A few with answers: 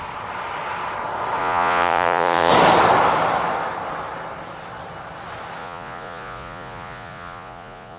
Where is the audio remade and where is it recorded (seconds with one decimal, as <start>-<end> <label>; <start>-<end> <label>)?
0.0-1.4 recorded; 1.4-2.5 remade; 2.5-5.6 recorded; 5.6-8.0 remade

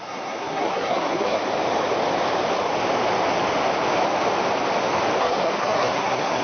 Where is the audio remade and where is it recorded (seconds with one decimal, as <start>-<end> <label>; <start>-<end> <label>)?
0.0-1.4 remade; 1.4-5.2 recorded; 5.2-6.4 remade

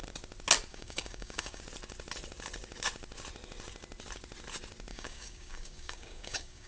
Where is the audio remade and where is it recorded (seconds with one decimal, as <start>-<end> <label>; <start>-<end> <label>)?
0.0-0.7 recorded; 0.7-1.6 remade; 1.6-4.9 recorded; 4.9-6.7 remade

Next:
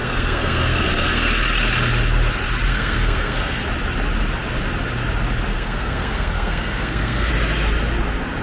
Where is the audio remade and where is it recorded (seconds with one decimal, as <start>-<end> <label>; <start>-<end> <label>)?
0.0-1.3 remade; 1.3-2.7 recorded; 2.7-3.6 remade; 3.6-5.5 recorded; 5.5-7.3 remade; 7.3-8.4 recorded

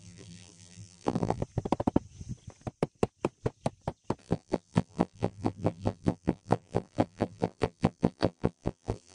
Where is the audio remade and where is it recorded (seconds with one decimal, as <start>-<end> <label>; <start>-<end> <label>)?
0.0-1.4 remade; 1.4-4.2 recorded; 4.2-9.1 remade

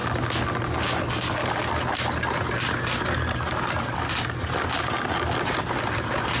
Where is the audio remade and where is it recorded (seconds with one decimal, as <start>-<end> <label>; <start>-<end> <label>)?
0.0-6.4 recorded

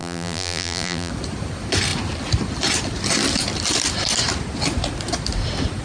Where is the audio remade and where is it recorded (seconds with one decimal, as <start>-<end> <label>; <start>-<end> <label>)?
0.0-1.1 remade; 1.1-5.8 recorded